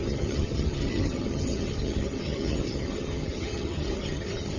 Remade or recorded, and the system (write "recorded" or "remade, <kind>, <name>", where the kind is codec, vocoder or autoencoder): remade, vocoder, HiFi-GAN